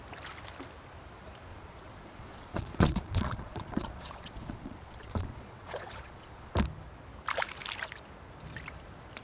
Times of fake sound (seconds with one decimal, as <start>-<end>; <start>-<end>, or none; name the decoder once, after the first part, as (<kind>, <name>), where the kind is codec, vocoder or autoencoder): 1.5-6.5 (vocoder, Vocos)